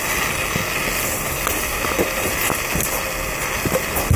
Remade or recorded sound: recorded